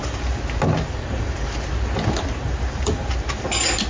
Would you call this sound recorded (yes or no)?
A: yes